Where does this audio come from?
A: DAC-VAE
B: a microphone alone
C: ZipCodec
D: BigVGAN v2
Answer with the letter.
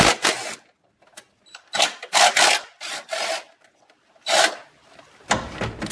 B